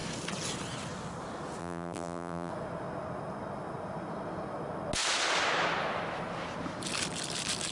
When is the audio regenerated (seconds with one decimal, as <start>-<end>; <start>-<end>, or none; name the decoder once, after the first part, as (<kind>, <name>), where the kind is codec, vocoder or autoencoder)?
1.6-2.5 (vocoder, BigVGAN v2)